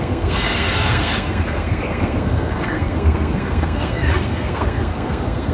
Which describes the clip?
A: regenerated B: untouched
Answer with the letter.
A